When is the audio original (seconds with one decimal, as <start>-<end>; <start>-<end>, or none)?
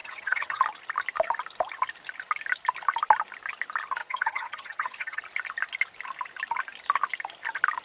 0.6-4.0; 5.2-7.8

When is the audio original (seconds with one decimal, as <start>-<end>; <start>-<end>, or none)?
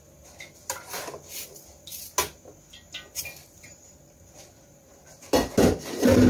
0.0-3.4; 5.4-6.3